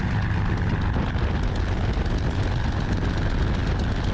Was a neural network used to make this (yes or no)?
no